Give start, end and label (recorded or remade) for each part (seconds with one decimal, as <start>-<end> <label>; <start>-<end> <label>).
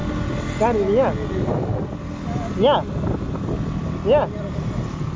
0.0-5.2 recorded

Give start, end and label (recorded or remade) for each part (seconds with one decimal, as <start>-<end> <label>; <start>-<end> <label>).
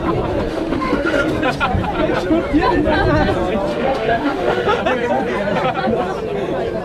0.0-0.5 recorded; 0.5-1.2 remade; 1.2-3.7 recorded; 3.7-4.8 remade; 4.8-6.8 recorded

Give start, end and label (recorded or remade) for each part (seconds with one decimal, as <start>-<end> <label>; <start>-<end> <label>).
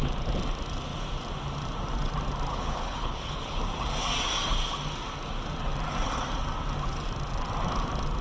0.0-2.5 recorded; 2.5-3.6 remade; 3.6-8.2 recorded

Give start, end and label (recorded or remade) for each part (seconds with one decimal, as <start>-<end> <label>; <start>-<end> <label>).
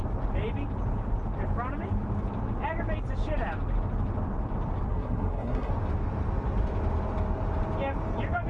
0.0-4.9 recorded; 4.9-5.7 remade; 5.7-8.5 recorded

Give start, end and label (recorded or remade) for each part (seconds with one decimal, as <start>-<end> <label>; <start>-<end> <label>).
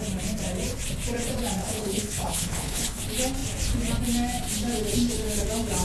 0.0-1.6 recorded; 1.6-3.0 remade; 3.0-5.8 recorded